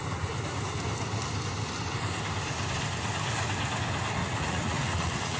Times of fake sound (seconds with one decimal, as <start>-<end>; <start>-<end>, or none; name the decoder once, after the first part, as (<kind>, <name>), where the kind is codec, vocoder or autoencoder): 4.2-5.4 (vocoder, Vocos)